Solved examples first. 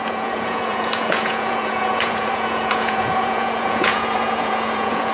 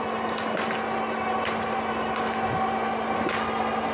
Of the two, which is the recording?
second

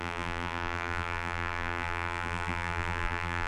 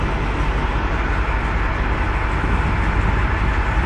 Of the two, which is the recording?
second